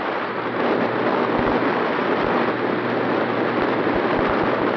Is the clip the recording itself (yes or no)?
yes